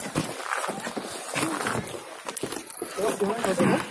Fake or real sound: real